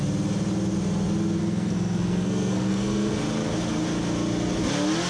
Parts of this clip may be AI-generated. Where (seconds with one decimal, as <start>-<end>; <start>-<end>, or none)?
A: 1.4-3.1